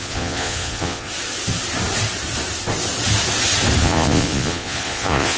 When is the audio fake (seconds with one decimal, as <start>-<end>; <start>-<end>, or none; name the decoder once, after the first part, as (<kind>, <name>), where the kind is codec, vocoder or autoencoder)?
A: 0.0-1.1 (vocoder, Vocos); 3.8-5.4